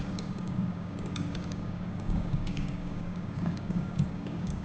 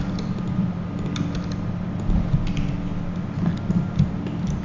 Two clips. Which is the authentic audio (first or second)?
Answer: second